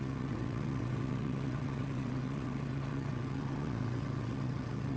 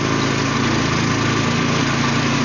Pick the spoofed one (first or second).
first